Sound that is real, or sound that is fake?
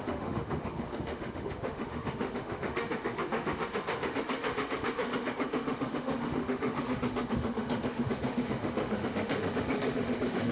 fake